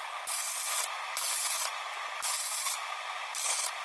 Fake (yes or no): no